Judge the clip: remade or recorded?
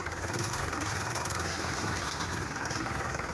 remade